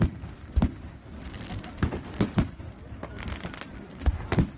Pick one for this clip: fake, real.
real